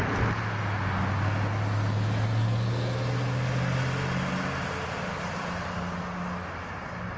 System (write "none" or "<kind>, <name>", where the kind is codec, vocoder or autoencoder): none